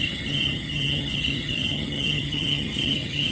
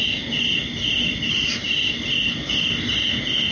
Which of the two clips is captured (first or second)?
second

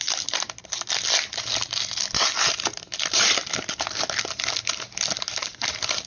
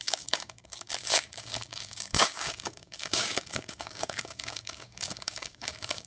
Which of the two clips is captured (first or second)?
first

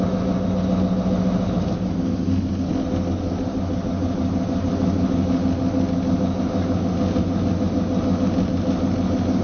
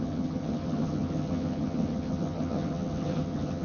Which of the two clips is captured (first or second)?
first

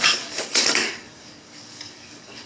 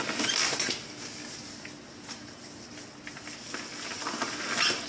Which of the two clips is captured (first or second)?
second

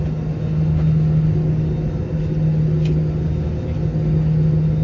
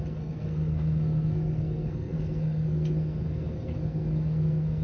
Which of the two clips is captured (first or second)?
first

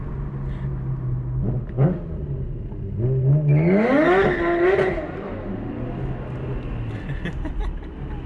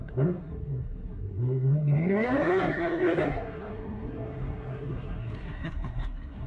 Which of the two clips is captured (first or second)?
first